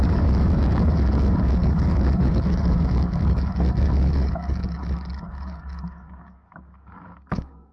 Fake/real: fake